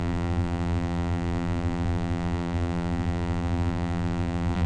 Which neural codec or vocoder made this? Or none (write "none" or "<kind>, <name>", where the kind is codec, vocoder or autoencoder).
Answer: vocoder, BigVGAN v2